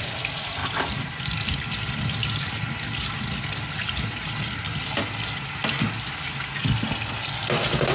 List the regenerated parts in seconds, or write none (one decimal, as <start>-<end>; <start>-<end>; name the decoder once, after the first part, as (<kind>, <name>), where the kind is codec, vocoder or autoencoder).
none